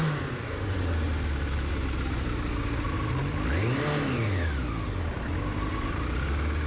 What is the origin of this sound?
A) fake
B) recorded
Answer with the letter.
B